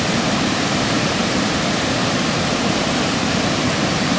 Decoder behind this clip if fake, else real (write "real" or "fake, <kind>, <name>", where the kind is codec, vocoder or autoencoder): fake, vocoder, BigVGAN v2